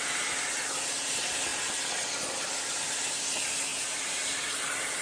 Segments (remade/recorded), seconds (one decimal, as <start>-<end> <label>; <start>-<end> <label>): 0.0-3.7 recorded; 3.7-4.6 remade; 4.6-5.0 recorded